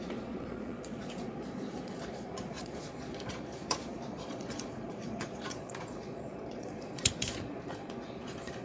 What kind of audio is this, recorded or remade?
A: remade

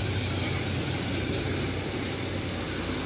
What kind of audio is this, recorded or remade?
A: recorded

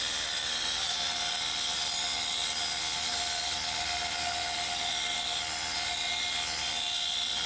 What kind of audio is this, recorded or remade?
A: recorded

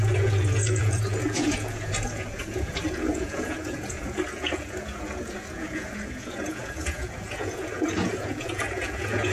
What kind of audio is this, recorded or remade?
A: remade